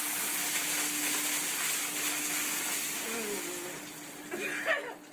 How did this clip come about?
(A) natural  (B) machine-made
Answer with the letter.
A